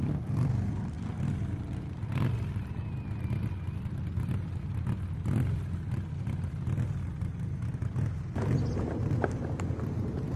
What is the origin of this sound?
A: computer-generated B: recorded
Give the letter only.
B